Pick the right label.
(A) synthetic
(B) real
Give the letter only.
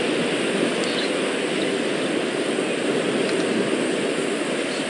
B